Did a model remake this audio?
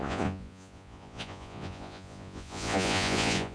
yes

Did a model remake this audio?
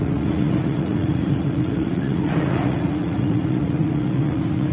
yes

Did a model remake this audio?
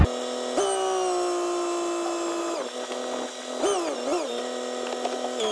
no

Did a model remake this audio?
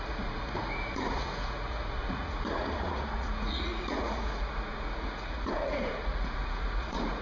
yes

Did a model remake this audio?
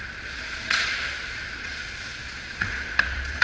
yes